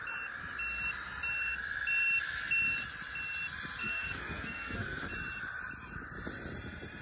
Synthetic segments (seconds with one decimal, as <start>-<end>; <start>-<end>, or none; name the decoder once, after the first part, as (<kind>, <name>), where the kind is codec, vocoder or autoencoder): 3.8-5.1 (codec, SNAC)